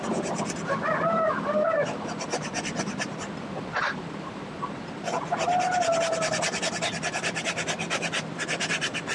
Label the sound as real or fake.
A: fake